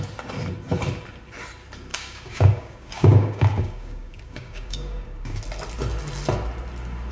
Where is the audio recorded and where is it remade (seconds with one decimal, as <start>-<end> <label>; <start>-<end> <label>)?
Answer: 0.0-1.9 recorded; 1.9-5.4 remade; 5.4-7.1 recorded